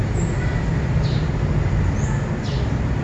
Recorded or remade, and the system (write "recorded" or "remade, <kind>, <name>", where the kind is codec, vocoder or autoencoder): recorded